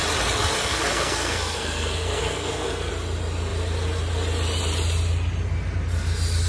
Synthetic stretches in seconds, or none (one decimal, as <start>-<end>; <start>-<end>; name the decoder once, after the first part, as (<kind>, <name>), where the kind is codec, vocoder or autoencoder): 0.6-2.9 (codec, SNAC)